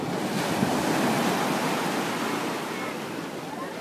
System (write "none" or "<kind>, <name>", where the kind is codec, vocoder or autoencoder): none